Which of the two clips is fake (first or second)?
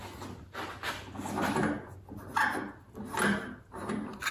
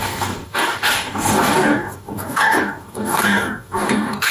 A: second